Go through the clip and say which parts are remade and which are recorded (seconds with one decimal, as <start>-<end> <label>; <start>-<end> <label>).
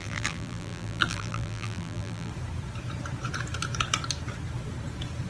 0.0-2.3 remade; 2.3-5.3 recorded